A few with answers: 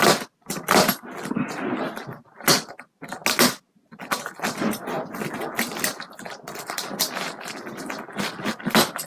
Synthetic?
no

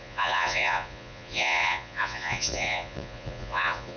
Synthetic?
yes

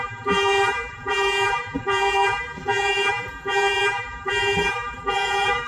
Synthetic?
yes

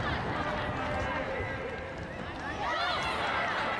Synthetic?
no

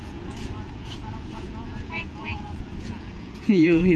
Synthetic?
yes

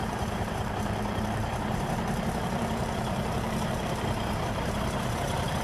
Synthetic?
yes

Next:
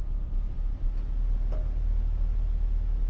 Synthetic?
no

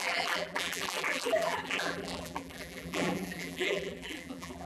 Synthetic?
yes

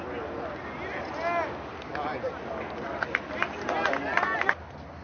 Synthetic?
no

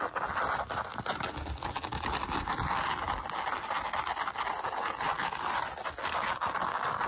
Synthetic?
no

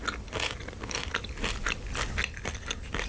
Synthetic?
no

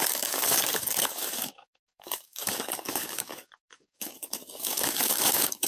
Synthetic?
yes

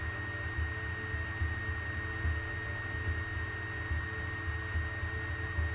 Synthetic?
no